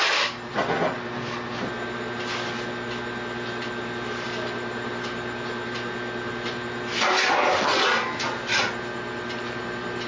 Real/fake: real